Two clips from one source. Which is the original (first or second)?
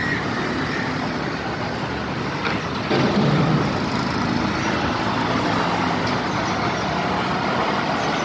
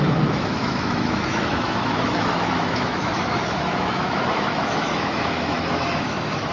first